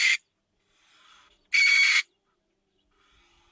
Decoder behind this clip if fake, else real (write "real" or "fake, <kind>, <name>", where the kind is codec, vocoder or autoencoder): real